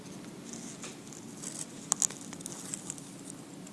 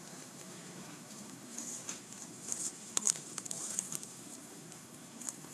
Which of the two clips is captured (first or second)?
first